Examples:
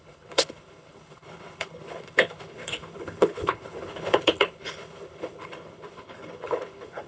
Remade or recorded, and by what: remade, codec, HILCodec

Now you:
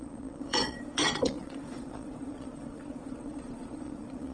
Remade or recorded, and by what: remade, vocoder, Vocos